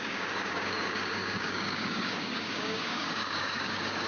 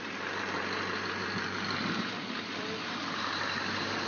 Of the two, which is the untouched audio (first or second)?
second